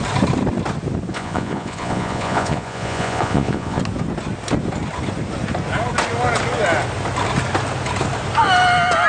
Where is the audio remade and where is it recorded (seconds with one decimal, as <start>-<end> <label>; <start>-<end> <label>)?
0.0-1.1 recorded; 1.1-3.8 remade; 3.8-9.1 recorded